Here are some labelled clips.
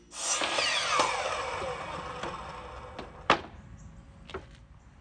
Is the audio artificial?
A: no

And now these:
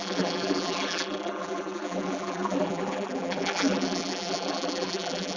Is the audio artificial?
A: yes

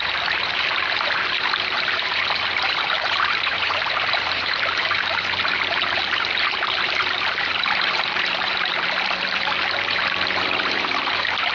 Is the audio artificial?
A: yes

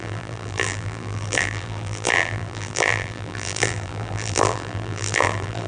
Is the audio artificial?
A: yes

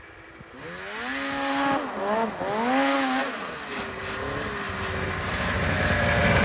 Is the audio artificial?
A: no